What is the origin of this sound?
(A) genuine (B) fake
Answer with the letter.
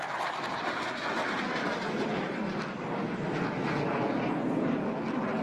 A